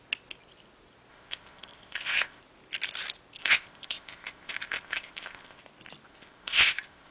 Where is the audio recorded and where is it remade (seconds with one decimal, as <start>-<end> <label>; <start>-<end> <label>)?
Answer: 0.0-1.1 recorded; 1.1-2.4 remade; 2.4-3.4 recorded; 3.4-5.6 remade; 5.6-6.1 recorded; 6.1-7.1 remade